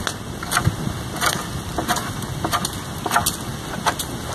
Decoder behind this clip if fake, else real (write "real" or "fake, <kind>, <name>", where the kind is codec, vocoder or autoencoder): real